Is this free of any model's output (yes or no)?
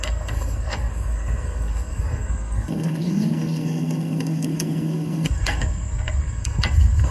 no